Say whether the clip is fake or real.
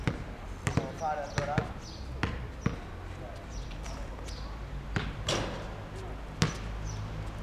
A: real